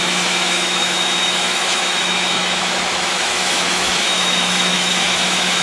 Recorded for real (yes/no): no